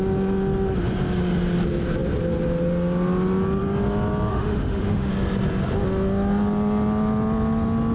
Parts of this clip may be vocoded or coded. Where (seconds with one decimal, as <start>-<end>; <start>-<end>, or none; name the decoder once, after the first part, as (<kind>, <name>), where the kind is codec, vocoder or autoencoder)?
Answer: 4.3-5.1 (autoencoder, DAC-VAE)